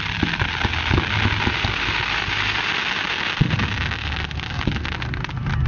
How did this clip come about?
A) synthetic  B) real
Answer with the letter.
B